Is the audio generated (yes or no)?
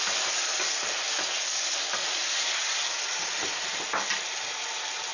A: no